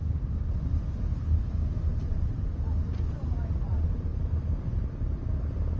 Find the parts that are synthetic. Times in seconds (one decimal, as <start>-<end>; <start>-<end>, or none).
none